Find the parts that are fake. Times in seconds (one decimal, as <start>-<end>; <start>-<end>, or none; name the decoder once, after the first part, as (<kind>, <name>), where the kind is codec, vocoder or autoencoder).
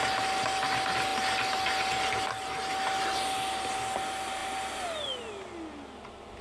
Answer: none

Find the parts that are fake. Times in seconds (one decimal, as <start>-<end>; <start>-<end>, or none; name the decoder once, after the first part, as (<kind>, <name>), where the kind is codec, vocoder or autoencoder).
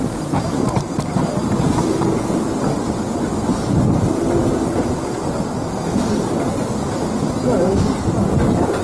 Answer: none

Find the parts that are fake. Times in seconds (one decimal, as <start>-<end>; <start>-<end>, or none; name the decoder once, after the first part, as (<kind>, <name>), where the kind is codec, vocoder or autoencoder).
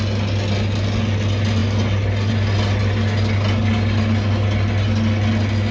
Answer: none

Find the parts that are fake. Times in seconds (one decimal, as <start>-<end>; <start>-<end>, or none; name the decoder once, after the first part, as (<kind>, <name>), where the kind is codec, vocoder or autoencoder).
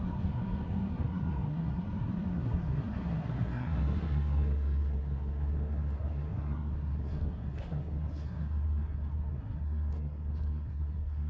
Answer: 0.0-11.3 (codec, SNAC)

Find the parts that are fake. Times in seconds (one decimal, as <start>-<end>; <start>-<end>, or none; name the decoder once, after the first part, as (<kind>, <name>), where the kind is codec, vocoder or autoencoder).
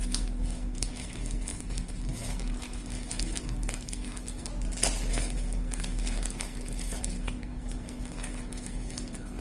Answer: 0.0-4.5 (codec, SNAC); 5.1-9.4